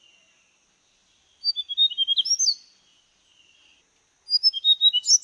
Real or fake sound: real